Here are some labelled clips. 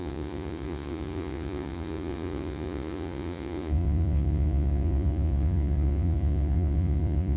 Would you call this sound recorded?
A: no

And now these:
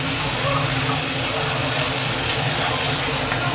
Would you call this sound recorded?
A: yes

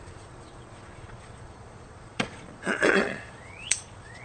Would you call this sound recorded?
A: no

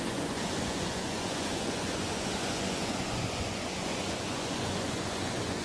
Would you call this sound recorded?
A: no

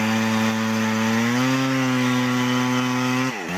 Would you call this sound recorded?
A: yes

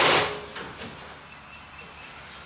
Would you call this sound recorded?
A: yes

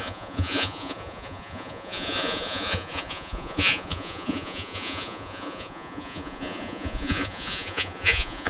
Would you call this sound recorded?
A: no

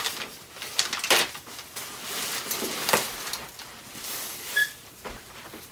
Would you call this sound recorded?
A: yes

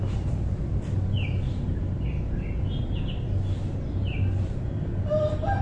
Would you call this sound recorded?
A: yes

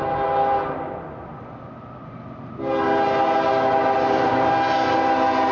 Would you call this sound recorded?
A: yes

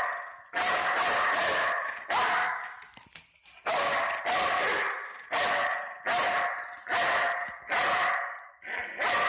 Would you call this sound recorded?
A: yes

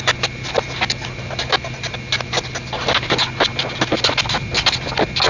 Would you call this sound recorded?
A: yes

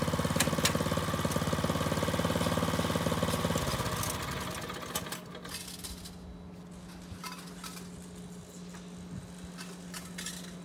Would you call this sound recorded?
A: yes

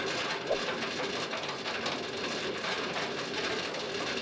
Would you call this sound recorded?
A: yes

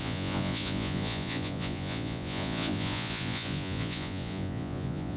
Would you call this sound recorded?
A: no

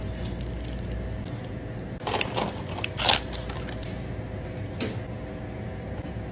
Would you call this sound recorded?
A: yes